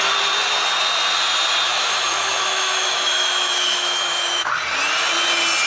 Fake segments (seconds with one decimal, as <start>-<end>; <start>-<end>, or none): 1.7-4.5